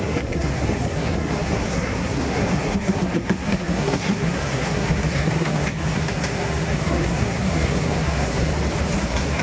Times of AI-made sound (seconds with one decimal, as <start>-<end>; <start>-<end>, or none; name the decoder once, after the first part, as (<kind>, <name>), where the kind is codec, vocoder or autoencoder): 0.0-8.5 (codec, SNAC); 9.0-9.4